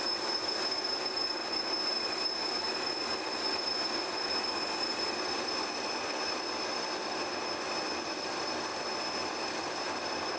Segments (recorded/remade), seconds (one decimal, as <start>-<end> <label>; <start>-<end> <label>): 0.0-10.4 recorded